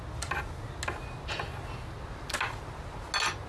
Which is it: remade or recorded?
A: recorded